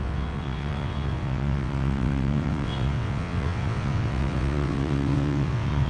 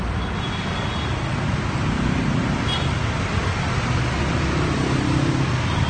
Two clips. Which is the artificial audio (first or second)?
first